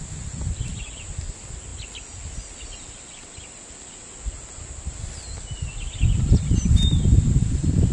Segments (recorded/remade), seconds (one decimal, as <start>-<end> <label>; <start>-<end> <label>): 0.0-7.9 recorded